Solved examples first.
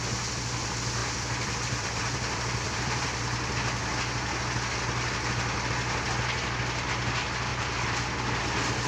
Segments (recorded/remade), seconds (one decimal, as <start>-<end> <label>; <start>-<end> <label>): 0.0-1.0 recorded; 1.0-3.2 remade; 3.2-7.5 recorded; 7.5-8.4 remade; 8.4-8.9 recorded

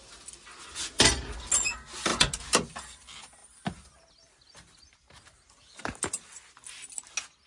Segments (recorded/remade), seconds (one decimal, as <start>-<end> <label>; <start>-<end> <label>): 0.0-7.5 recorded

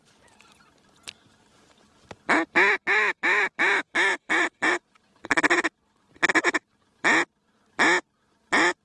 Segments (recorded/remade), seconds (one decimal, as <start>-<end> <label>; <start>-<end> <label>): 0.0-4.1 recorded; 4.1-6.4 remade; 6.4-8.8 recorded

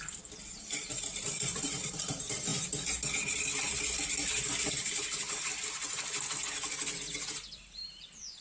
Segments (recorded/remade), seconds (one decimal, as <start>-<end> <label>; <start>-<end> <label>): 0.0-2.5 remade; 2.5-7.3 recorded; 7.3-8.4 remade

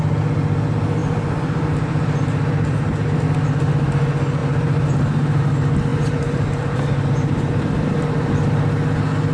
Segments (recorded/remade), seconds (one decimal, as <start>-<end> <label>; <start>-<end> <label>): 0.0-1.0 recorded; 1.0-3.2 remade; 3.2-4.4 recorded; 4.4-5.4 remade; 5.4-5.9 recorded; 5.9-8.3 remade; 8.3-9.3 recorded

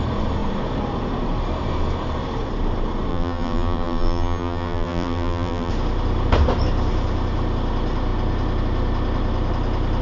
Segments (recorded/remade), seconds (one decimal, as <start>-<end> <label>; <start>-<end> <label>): 0.0-3.1 recorded; 3.1-5.7 remade; 5.7-10.0 recorded